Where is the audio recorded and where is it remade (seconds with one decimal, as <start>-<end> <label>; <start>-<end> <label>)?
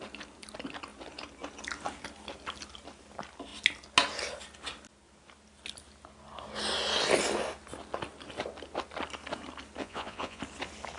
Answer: 0.0-9.8 recorded; 9.8-10.4 remade; 10.4-11.0 recorded